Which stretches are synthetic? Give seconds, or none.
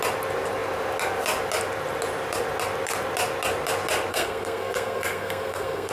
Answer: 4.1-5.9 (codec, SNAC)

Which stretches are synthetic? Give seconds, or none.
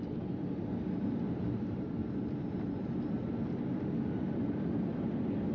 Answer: 0.0-2.0 (vocoder, BigVGAN v2); 3.0-5.5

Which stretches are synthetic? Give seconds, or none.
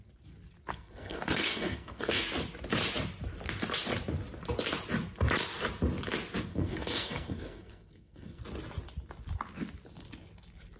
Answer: 0.7-2.2 (codec, SNAC); 6.5-8.4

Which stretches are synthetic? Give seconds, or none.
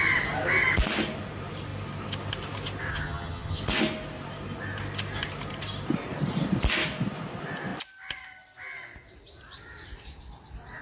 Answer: 2.9-3.6 (vocoder, HiFi-GAN)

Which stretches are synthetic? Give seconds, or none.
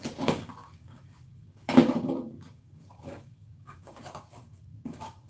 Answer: 0.0-5.3 (codec, DAC)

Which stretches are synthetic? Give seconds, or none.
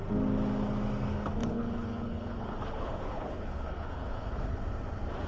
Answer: 1.4-4.6 (codec, HILCodec)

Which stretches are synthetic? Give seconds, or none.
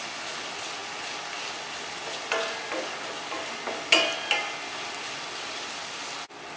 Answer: none